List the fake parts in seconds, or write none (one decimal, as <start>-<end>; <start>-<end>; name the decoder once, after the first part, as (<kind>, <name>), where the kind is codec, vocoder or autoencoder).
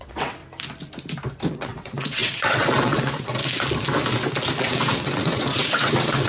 0.0-0.4 (vocoder, WaveNeXt); 1.5-3.4; 4.6-6.3